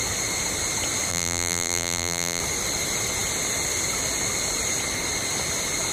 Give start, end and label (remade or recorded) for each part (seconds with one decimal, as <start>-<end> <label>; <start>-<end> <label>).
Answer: 0.0-1.1 recorded; 1.1-2.4 remade; 2.4-5.9 recorded